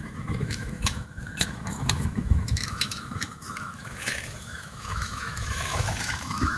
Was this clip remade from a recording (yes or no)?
yes